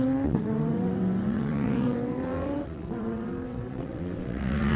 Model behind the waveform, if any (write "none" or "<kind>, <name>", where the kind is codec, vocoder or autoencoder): vocoder, WaveNeXt